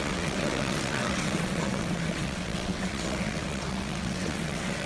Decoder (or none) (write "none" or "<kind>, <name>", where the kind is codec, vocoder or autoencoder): vocoder, WaveNeXt